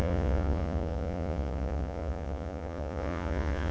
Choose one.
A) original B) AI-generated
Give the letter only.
B